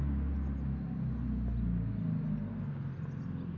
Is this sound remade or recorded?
recorded